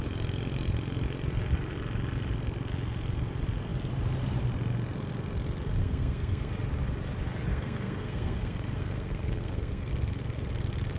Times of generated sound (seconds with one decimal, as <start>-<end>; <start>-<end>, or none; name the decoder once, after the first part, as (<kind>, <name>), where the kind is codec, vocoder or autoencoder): 5.8-6.5 (codec, SNAC); 7.5-9.9